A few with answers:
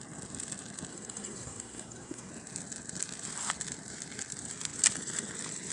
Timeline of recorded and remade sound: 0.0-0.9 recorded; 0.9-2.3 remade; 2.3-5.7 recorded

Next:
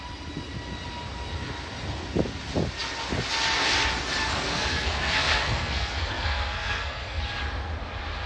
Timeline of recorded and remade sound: 0.0-4.2 recorded; 4.2-7.2 remade; 7.2-8.3 recorded

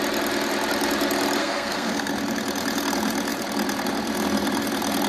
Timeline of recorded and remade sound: 0.0-1.4 recorded; 1.4-2.1 remade; 2.1-5.1 recorded

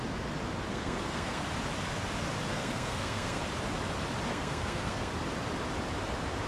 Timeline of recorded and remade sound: 0.0-0.7 recorded; 0.7-1.4 remade; 1.4-2.5 recorded; 2.5-3.4 remade; 3.4-4.3 recorded; 4.3-5.1 remade; 5.1-6.5 recorded

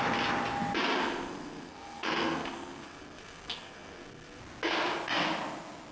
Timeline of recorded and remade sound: 0.0-1.0 recorded; 1.0-4.4 remade; 4.4-5.9 recorded

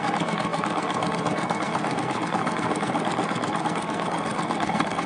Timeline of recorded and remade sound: 0.0-5.1 remade

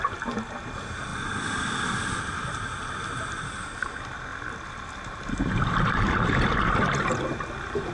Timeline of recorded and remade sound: 0.0-7.9 recorded

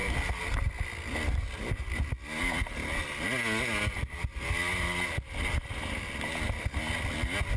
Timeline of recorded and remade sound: 0.0-7.6 recorded